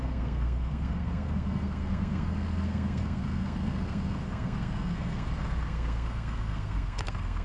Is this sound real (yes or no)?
no